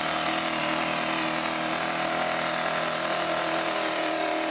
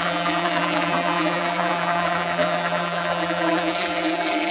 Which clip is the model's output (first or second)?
second